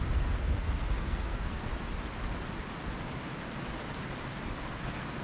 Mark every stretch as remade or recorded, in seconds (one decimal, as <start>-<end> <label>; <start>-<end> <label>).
0.0-1.7 remade; 1.7-4.6 recorded; 4.6-5.2 remade